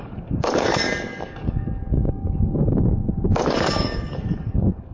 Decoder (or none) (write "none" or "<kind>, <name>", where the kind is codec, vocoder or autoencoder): codec, DAC